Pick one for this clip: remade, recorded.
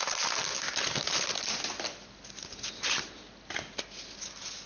recorded